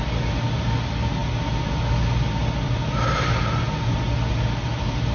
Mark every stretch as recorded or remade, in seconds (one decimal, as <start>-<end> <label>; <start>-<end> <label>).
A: 0.0-5.1 recorded